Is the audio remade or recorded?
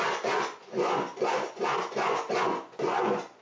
remade